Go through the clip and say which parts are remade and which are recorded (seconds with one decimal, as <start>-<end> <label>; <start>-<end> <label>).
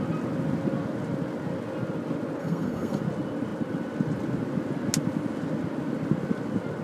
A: 0.0-2.4 recorded; 2.4-3.0 remade; 3.0-6.8 recorded